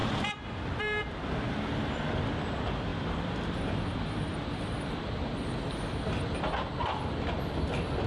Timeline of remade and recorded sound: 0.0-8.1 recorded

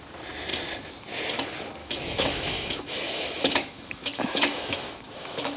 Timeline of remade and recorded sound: 0.0-1.8 recorded; 1.8-5.6 remade

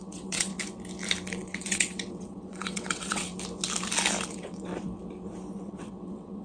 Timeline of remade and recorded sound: 0.0-0.5 remade; 0.5-1.3 recorded; 1.3-3.3 remade; 3.3-4.3 recorded; 4.3-4.7 remade; 4.7-5.6 recorded; 5.6-6.4 remade

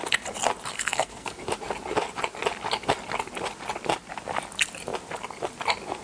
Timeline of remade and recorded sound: 0.0-0.7 recorded; 0.7-1.4 remade; 1.4-6.0 recorded